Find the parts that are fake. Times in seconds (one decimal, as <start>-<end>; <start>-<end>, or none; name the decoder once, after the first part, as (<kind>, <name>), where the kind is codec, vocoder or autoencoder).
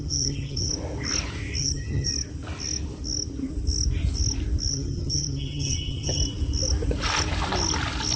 0.0-0.7 (vocoder, HiFi-GAN); 1.6-2.1; 4.7-6.2